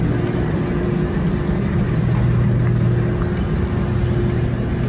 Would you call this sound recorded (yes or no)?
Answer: yes